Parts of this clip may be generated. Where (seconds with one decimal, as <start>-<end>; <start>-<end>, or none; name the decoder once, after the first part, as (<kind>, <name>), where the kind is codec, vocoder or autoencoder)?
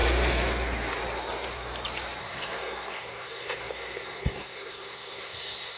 2.2-5.8 (codec, SNAC)